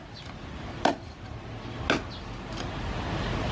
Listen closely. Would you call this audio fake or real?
real